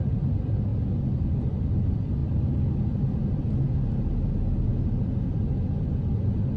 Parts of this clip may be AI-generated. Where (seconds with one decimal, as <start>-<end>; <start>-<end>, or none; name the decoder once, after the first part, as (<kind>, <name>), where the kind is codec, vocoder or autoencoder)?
0.0-0.7 (vocoder, BigVGAN v2); 1.7-2.2